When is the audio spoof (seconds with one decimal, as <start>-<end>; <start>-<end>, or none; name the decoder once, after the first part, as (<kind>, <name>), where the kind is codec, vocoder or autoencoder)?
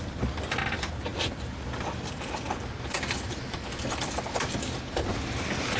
none